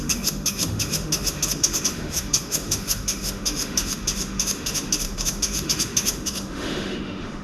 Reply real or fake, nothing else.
fake